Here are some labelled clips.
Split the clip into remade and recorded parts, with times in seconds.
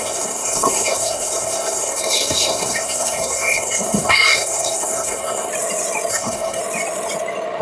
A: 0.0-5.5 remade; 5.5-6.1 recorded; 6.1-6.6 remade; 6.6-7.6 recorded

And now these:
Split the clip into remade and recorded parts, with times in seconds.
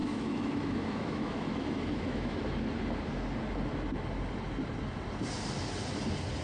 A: 0.0-2.4 remade; 2.4-6.4 recorded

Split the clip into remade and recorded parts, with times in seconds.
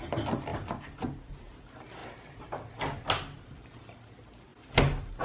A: 0.0-5.2 recorded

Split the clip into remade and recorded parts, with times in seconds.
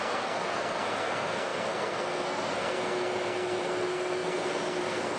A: 0.0-5.2 remade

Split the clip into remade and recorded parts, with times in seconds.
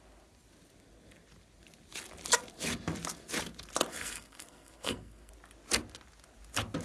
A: 0.0-3.9 recorded; 3.9-5.3 remade; 5.3-6.8 recorded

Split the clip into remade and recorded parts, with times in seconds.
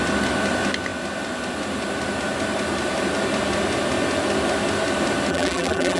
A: 0.0-5.3 recorded; 5.3-6.0 remade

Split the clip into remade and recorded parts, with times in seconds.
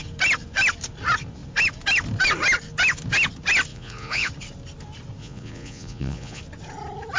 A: 0.0-3.7 recorded; 3.7-4.3 remade; 4.3-5.2 recorded; 5.2-6.4 remade; 6.4-7.2 recorded